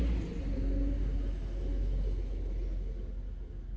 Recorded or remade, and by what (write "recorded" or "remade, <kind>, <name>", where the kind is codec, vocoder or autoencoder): recorded